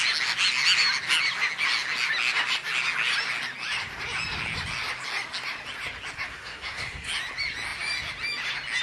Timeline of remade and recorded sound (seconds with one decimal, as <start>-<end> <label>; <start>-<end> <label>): 0.0-6.3 recorded; 6.3-7.1 remade; 7.1-8.8 recorded